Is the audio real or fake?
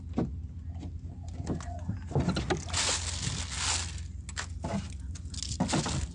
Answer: real